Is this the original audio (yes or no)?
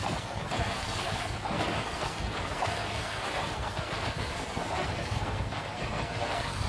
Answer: no